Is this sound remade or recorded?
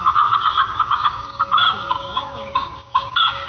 remade